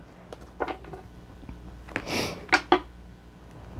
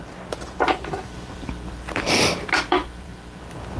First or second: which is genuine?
first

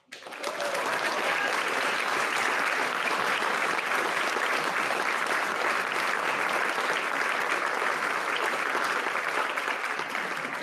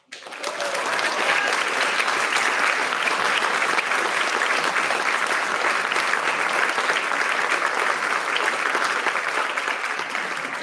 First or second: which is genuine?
second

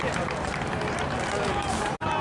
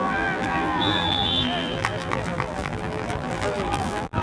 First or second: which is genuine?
first